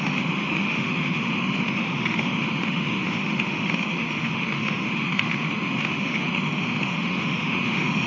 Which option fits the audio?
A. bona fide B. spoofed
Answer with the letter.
B